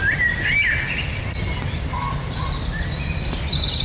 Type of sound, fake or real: real